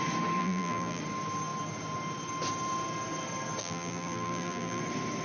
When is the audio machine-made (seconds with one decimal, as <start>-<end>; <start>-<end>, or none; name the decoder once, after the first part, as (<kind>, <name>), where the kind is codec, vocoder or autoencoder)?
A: 0.4-1.0 (vocoder, BigVGAN v2); 3.6-4.8